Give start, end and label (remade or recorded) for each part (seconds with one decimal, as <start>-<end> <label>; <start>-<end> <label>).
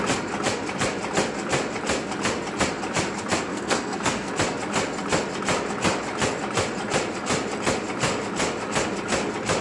0.0-3.5 recorded; 3.5-4.3 remade; 4.3-9.6 recorded